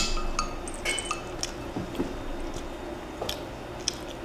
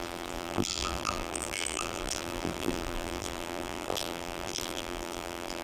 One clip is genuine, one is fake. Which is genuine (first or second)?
first